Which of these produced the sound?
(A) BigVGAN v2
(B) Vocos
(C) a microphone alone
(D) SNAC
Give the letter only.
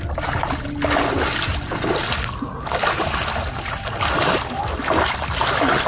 C